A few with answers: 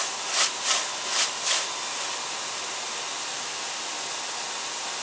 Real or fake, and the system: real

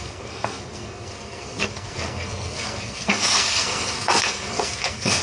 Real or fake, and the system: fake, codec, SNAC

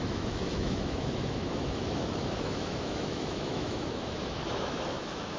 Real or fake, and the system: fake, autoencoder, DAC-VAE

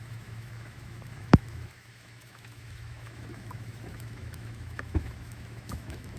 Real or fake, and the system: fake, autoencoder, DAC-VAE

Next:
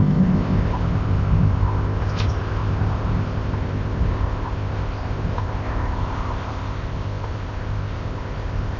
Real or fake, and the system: fake, codec, ZipCodec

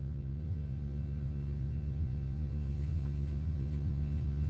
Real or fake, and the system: fake, vocoder, Vocos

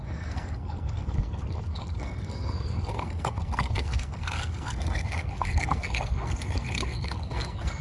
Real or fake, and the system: fake, codec, SNAC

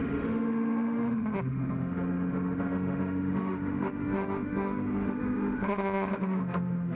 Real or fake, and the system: fake, autoencoder, DAC-VAE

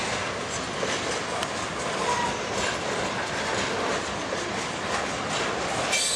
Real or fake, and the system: real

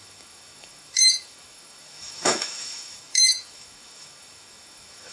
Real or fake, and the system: fake, autoencoder, DAC-VAE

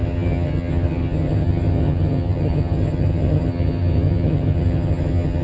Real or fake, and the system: fake, vocoder, HiFi-GAN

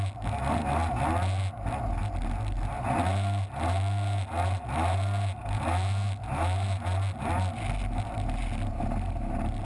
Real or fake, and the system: real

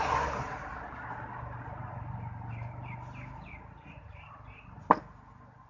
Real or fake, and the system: real